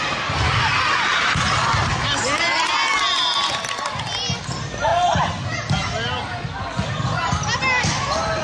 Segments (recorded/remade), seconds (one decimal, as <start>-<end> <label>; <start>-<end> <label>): 0.0-8.4 recorded

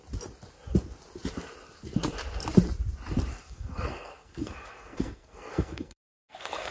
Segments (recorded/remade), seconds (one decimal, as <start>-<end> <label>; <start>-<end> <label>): 0.0-3.3 recorded; 3.3-6.7 remade

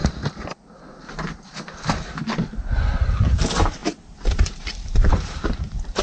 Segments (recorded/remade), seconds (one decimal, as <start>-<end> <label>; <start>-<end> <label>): 0.0-3.4 recorded; 3.4-6.0 remade